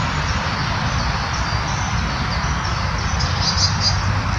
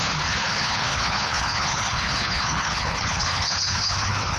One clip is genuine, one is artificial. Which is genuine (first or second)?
first